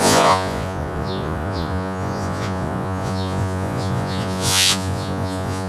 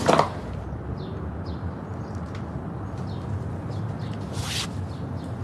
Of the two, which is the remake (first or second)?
first